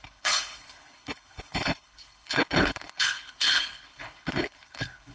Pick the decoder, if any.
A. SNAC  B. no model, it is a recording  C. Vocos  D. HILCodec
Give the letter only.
D